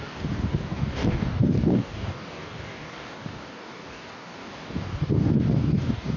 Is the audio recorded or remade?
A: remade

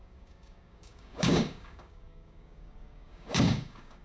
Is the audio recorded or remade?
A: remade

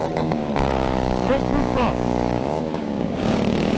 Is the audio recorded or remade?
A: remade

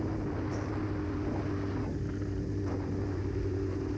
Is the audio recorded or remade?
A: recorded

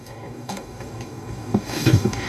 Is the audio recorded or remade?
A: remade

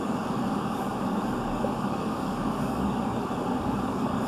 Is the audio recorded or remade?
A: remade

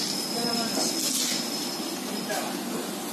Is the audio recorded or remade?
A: recorded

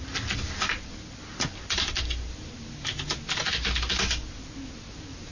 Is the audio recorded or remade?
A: recorded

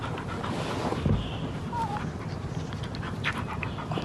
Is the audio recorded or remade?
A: recorded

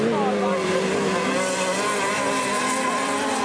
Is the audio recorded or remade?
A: recorded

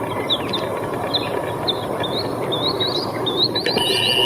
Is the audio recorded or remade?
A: recorded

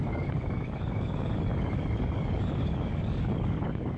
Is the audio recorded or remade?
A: remade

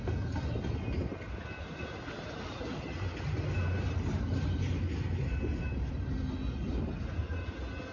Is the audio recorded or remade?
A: recorded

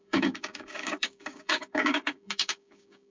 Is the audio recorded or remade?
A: remade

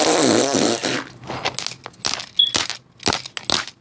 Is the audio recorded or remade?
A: recorded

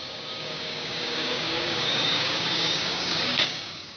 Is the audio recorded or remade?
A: remade